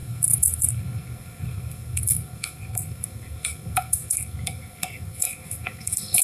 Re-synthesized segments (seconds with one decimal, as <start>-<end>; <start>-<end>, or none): 0.0-6.2